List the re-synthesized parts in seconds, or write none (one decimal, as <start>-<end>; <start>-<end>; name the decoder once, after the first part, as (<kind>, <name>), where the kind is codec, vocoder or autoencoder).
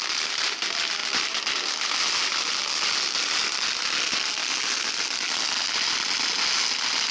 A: none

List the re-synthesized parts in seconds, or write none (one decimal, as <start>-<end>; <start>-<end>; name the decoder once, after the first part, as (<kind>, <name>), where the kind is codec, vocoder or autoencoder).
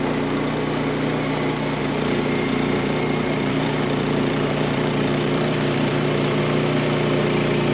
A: 1.8-6.4 (vocoder, BigVGAN v2)